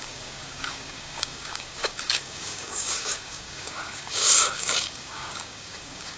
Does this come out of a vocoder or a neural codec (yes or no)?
yes